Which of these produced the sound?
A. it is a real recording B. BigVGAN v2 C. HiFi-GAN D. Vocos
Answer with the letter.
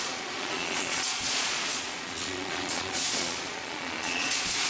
D